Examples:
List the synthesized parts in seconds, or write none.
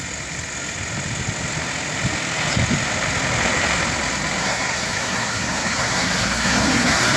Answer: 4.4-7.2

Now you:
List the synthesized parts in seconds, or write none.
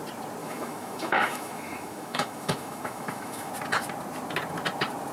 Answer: 0.4-3.5